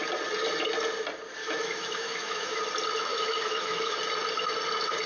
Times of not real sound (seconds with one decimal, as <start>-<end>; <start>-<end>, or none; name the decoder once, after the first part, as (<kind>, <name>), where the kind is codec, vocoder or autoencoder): 1.4-2.6 (autoencoder, DAC-VAE); 3.1-4.0